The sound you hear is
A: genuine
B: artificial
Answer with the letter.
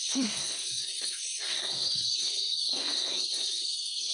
B